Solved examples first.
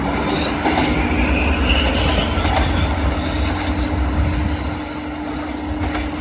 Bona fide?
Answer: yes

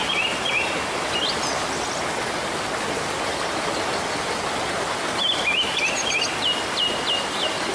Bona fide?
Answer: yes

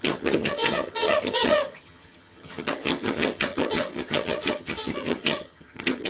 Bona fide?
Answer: no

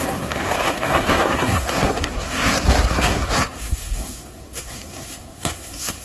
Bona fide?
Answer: no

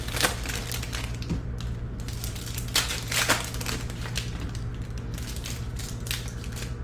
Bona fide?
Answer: yes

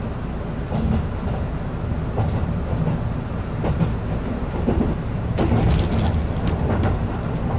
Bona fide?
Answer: yes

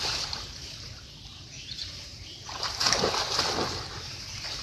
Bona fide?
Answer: no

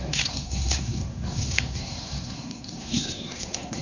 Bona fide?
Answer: no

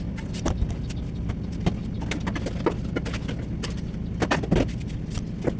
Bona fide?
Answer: yes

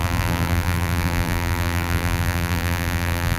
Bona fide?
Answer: no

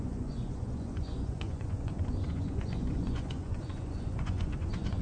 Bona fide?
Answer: no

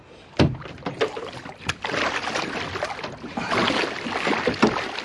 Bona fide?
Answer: yes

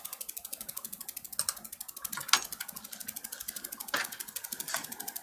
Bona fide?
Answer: yes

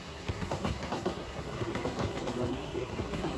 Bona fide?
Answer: no